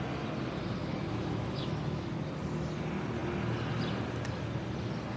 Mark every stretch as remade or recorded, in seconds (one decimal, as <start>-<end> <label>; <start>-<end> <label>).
0.0-0.8 recorded; 0.8-2.1 remade; 2.1-5.2 recorded